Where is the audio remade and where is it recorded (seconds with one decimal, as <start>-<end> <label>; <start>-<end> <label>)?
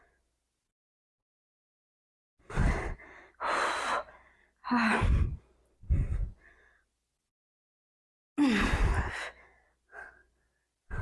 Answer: 0.0-11.0 recorded